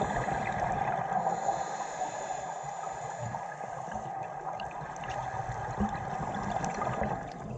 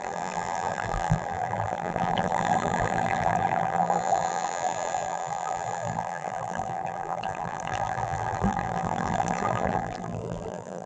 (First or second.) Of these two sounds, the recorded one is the first